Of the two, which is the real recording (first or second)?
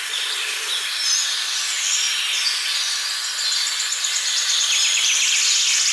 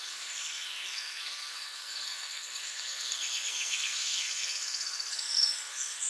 first